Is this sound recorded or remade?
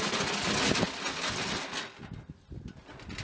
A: recorded